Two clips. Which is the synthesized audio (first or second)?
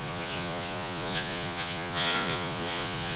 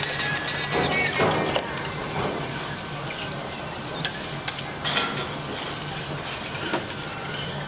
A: first